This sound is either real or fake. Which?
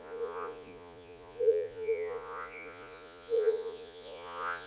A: fake